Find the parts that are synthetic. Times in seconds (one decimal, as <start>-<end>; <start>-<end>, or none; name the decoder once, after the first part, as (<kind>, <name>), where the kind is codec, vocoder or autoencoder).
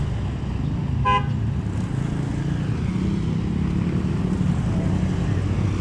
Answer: none